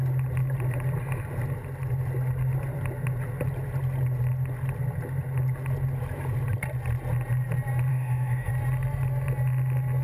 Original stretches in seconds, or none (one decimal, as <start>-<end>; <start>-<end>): 0.0-7.9; 8.5-10.0